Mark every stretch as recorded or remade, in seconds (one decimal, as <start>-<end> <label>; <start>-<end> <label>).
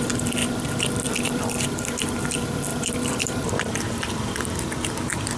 0.0-0.4 recorded; 0.4-1.5 remade; 1.5-2.7 recorded; 2.7-4.1 remade; 4.1-5.4 recorded